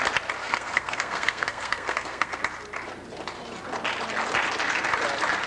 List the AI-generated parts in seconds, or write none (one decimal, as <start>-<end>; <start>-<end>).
0.4-2.4